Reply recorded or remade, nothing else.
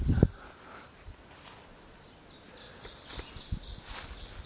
recorded